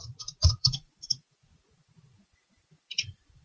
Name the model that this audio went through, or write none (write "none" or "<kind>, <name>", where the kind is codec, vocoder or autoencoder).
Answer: vocoder, Vocos